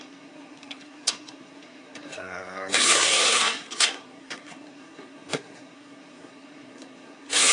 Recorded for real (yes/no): no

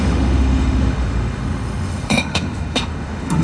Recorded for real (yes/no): no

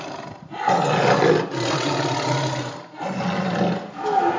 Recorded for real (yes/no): yes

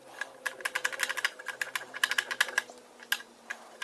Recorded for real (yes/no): yes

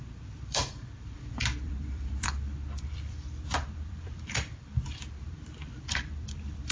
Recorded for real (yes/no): no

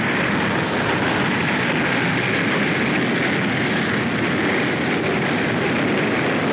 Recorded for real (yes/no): yes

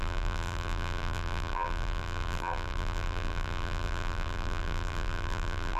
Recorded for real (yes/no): no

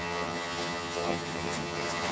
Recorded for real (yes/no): no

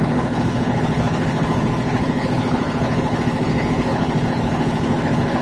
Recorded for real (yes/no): no